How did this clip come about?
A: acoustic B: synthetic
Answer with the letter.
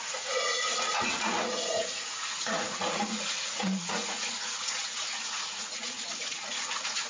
B